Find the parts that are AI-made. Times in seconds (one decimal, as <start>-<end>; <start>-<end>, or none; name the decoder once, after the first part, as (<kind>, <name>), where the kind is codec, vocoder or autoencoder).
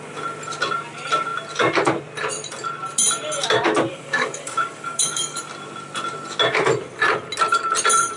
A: 3.9-5.4 (codec, DAC)